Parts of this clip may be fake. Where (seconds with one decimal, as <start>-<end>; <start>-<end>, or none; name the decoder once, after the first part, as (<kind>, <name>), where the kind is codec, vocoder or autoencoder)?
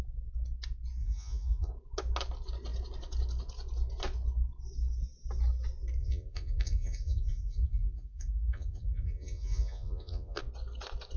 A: 1.0-1.7 (vocoder, Vocos); 6.0-10.4